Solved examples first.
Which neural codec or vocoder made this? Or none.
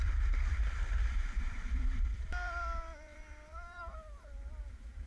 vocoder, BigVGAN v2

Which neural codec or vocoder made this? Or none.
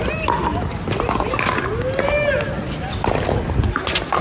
none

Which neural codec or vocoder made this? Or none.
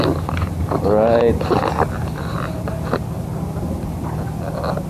none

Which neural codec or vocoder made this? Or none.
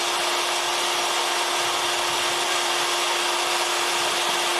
none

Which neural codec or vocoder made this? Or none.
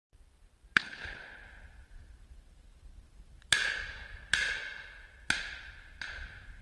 vocoder, BigVGAN v2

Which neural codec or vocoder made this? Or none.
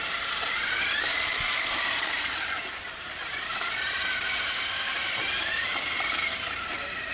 vocoder, BigVGAN v2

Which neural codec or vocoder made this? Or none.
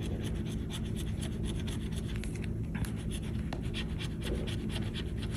none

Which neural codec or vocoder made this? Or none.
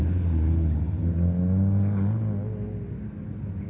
none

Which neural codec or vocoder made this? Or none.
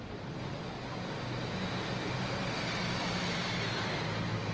none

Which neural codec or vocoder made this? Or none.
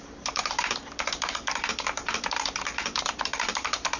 vocoder, BigVGAN v2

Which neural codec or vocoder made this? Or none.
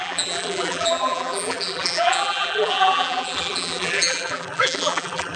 vocoder, BigVGAN v2